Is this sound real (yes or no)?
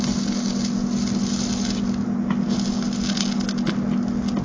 yes